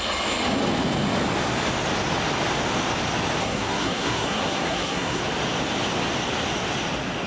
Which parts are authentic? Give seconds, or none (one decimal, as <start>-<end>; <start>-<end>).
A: 0.0-3.4; 5.2-7.3